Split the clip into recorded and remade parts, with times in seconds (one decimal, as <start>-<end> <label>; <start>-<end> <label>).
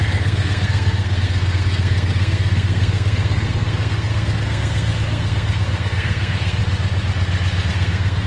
0.0-6.6 remade; 6.6-7.7 recorded; 7.7-8.3 remade